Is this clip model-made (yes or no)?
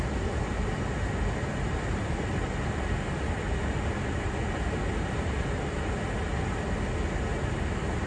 no